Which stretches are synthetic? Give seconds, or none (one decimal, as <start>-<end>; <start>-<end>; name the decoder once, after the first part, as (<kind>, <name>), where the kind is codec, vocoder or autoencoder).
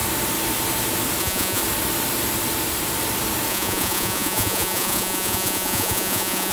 1.2-1.6 (vocoder, Vocos); 3.5-6.5